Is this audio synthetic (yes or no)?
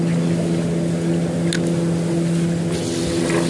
no